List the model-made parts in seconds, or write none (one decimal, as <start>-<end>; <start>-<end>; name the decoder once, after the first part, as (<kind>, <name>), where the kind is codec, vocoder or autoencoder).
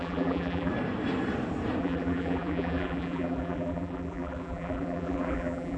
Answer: 0.0-0.7 (vocoder, BigVGAN v2); 1.8-5.8